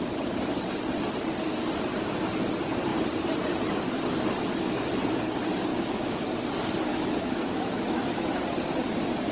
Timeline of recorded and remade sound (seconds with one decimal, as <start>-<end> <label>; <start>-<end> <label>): 0.0-5.7 recorded; 5.7-6.3 remade; 6.3-6.9 recorded; 6.9-8.4 remade; 8.4-9.3 recorded